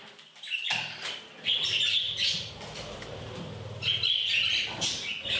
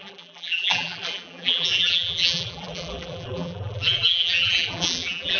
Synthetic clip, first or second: second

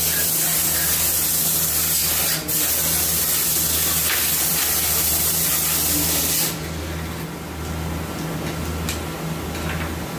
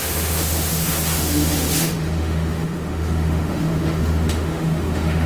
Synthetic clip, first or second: second